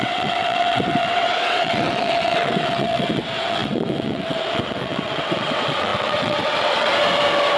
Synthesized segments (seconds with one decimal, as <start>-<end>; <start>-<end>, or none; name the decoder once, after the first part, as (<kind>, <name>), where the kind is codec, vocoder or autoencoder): 0.0-6.9 (vocoder, WaveNeXt)